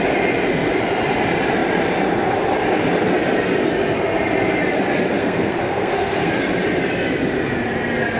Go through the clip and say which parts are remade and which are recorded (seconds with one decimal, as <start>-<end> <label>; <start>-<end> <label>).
0.0-5.2 recorded; 5.2-6.4 remade; 6.4-8.2 recorded